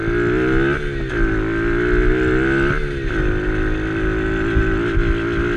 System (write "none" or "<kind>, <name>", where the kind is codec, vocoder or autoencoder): none